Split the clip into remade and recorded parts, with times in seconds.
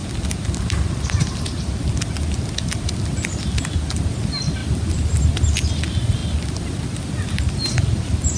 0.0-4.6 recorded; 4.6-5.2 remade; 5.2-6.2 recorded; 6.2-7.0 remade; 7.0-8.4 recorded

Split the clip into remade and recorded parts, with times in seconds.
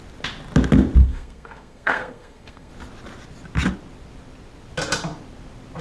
0.0-1.0 recorded; 1.0-2.7 remade; 2.7-5.8 recorded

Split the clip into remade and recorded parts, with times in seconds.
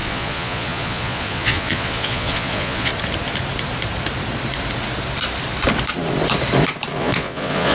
0.0-2.9 remade; 2.9-7.0 recorded; 7.0-7.7 remade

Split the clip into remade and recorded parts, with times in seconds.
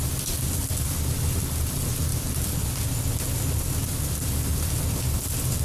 0.0-2.1 recorded; 2.1-2.7 remade; 2.7-4.5 recorded; 4.5-5.6 remade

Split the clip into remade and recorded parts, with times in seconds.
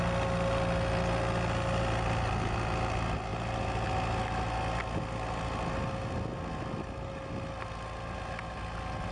0.0-9.1 recorded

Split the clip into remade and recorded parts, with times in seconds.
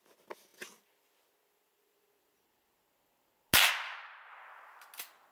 0.0-5.3 recorded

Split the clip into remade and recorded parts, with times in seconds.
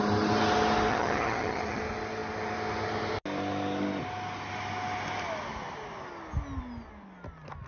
0.0-0.9 recorded; 0.9-1.8 remade; 1.8-7.7 recorded